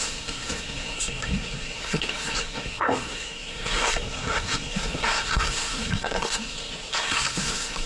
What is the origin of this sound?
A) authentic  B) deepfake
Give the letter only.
B